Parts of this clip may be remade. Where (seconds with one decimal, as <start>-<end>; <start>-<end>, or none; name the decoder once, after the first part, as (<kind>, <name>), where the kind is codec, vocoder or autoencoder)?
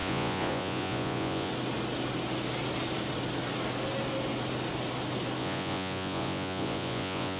0.0-1.5 (vocoder, Vocos); 5.4-7.4